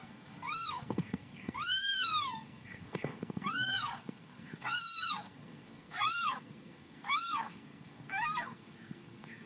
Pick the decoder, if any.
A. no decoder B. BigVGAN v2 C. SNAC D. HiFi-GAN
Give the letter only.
C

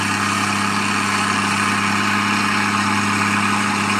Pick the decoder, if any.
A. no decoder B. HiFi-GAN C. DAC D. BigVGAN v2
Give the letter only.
A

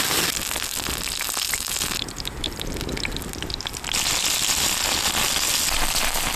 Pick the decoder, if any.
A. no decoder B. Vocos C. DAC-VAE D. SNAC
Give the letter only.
A